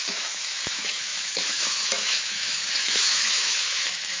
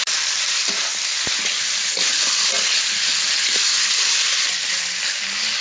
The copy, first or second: first